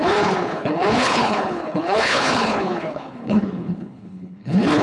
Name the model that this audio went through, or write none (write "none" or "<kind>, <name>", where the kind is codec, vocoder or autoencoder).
codec, HILCodec